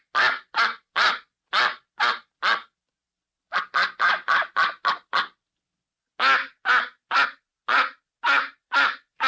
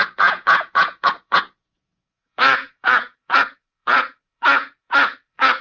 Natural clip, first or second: first